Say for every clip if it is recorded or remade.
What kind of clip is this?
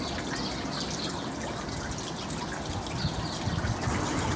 recorded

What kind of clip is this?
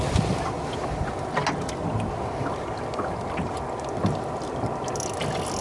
recorded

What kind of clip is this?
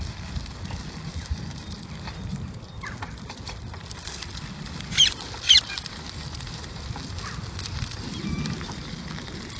recorded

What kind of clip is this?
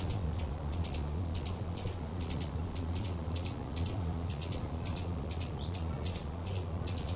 remade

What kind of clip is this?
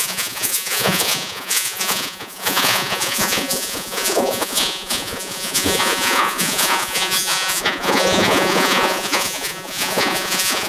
remade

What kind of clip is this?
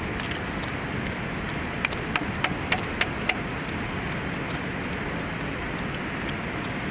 recorded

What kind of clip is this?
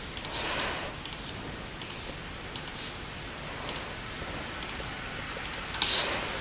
recorded